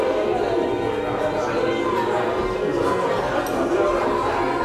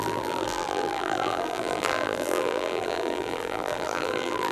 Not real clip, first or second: second